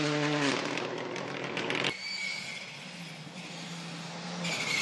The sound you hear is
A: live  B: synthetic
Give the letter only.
A